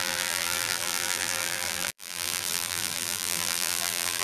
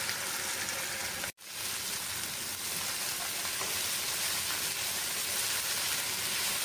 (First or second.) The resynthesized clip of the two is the first